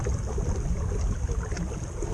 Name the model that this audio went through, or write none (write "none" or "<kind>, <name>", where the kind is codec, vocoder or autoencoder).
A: none